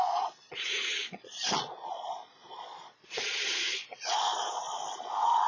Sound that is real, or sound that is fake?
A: fake